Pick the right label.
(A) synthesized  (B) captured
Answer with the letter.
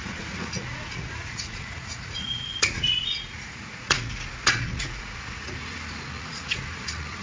A